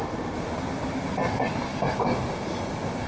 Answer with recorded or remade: recorded